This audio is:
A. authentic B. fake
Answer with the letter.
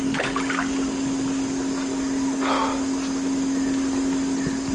A